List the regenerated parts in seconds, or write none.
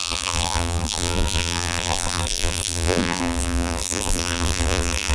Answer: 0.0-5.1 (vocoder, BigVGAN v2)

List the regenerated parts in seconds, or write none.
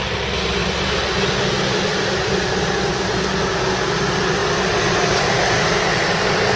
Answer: none